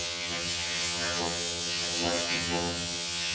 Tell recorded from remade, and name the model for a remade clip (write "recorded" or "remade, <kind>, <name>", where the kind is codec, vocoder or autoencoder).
remade, vocoder, HiFi-GAN